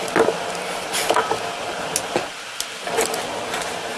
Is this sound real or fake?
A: real